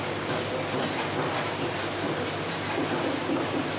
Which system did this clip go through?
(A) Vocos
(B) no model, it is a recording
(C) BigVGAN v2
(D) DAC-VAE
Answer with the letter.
B